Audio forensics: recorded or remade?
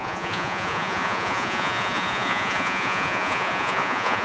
remade